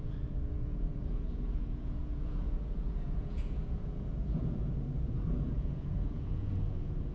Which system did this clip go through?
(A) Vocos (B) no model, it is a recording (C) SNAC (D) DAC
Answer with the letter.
A